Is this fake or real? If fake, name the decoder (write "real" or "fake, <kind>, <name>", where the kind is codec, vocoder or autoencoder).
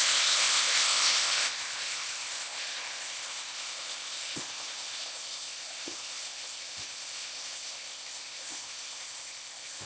fake, codec, ZipCodec